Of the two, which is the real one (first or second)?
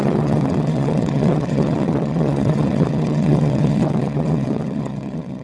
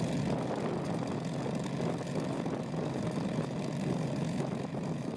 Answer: second